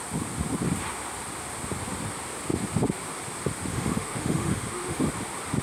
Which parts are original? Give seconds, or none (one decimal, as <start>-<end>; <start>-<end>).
0.0-3.7; 5.0-5.6